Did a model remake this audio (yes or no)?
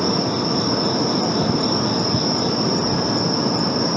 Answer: no